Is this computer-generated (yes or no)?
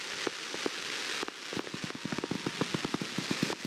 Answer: no